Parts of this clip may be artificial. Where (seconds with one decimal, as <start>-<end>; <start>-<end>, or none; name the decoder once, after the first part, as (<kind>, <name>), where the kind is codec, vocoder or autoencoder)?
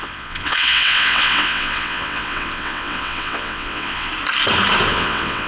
0.0-4.1 (vocoder, WaveNeXt); 4.9-5.5